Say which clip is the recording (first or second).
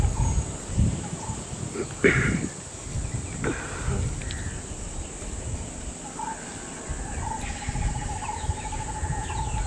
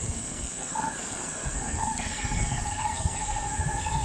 first